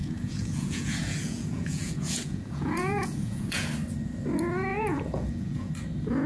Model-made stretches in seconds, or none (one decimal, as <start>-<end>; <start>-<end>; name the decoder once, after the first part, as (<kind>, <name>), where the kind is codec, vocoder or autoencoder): 0.0-3.7 (vocoder, Vocos); 4.7-5.7